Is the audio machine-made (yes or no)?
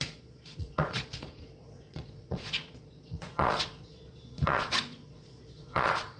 yes